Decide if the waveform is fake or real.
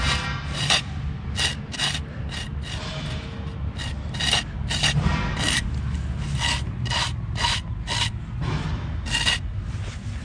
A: real